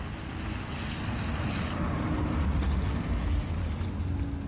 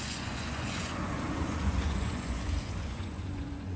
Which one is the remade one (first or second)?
second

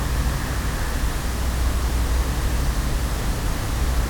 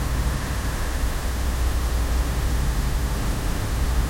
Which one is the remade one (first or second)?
second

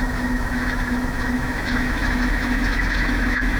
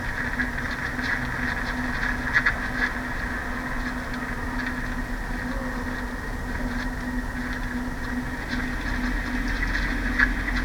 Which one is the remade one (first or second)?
first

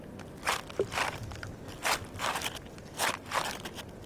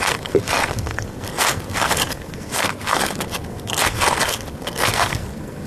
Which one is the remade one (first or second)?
second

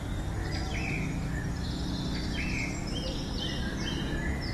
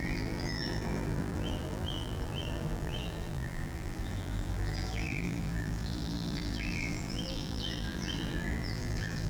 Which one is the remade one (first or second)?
second